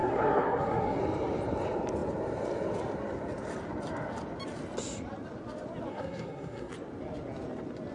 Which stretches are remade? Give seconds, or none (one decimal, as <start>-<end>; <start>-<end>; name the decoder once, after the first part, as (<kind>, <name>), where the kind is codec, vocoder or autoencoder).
0.0-1.0 (codec, SNAC); 5.9-6.7